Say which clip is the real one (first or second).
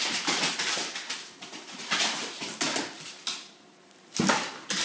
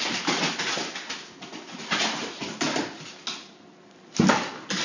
second